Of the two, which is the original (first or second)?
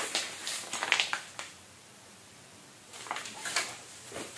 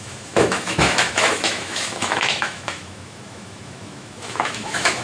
first